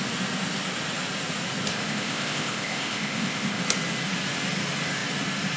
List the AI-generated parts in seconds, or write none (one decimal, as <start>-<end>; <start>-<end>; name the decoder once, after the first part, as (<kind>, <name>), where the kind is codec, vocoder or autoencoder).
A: 1.7-3.6 (codec, ZipCodec)